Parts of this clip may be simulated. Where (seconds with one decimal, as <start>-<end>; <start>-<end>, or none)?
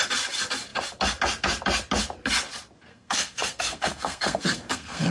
2.9-5.1